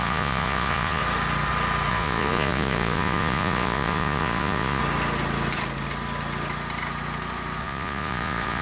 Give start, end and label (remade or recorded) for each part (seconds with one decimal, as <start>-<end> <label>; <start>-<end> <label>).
0.0-1.0 remade; 1.0-1.9 recorded; 1.9-4.8 remade; 4.8-7.6 recorded; 7.6-8.6 remade